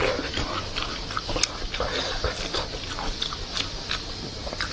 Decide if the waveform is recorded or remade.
recorded